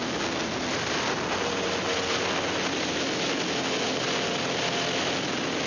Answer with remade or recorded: recorded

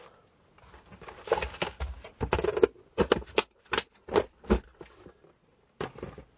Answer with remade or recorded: recorded